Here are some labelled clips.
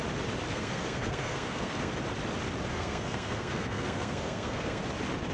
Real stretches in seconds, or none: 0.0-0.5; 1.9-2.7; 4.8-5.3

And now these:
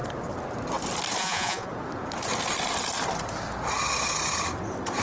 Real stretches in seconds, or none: 0.0-1.2; 1.7-5.0

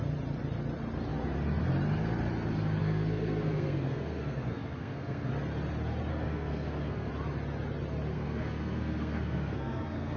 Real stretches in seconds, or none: 0.0-2.8; 5.3-6.1; 7.1-8.1

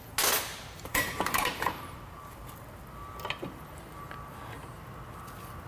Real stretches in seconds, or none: 0.0-0.5; 2.0-5.7